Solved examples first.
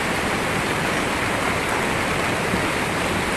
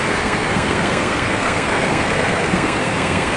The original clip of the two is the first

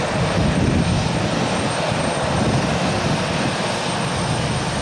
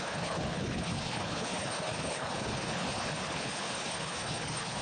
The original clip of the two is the first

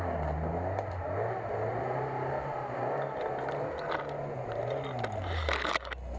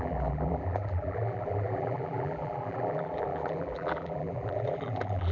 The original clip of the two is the first